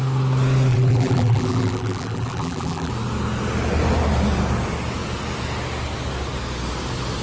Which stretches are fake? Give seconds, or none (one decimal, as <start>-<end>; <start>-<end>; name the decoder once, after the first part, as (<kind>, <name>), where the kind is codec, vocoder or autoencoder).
0.7-2.9 (vocoder, BigVGAN v2)